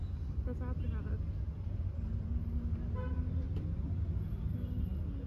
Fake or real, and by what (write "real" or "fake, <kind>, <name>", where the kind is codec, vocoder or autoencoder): real